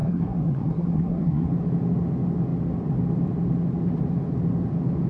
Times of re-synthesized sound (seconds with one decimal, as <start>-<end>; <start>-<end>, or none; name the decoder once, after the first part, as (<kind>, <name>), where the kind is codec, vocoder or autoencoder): 0.0-1.5 (codec, SNAC)